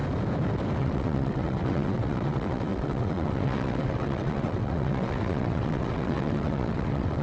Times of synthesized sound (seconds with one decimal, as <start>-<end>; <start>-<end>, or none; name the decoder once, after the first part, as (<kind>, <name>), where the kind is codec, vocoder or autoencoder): 0.8-7.2 (vocoder, WaveNeXt)